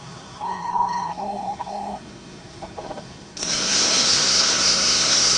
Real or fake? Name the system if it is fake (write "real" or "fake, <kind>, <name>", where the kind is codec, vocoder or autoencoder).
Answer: fake, codec, SNAC